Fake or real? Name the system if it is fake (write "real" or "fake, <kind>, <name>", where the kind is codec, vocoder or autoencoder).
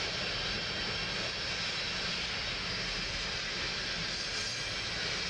real